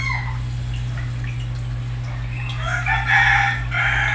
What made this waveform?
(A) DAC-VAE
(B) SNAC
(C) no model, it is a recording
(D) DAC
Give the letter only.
C